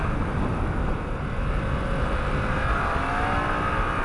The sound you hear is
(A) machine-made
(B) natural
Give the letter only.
B